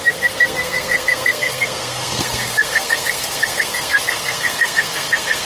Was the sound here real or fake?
fake